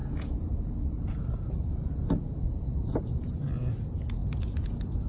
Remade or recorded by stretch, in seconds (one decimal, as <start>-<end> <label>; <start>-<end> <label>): 0.0-0.7 remade; 0.7-1.7 recorded; 1.7-3.3 remade; 3.3-4.2 recorded; 4.2-5.1 remade